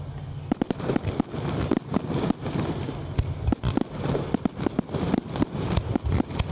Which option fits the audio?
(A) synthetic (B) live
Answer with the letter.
B